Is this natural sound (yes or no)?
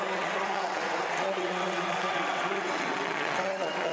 no